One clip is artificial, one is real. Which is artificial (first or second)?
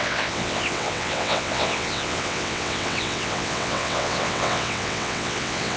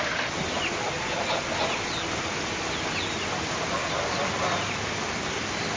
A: first